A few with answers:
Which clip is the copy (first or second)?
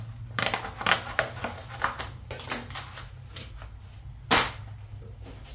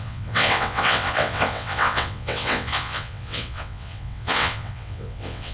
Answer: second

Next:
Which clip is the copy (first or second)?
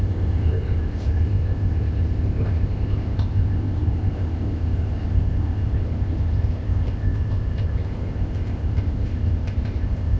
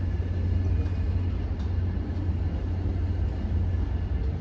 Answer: first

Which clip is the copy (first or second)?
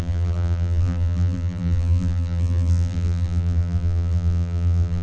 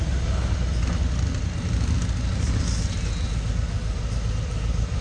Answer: first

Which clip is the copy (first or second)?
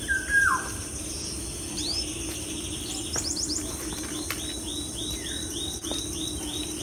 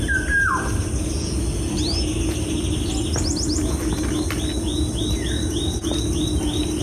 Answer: first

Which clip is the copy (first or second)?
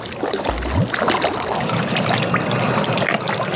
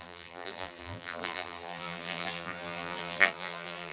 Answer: second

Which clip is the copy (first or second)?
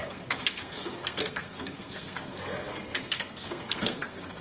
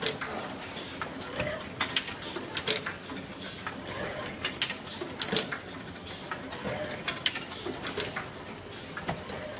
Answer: first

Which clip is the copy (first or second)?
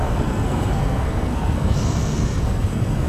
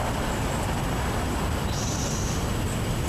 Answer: first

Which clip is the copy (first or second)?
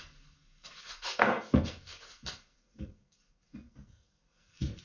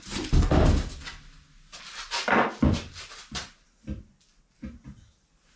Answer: first